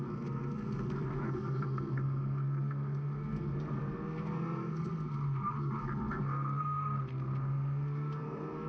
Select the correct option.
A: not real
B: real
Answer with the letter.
A